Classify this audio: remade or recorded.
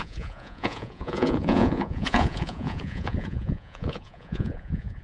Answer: remade